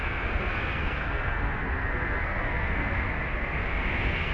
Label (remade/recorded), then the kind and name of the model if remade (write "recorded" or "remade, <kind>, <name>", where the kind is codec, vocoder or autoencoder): remade, codec, SNAC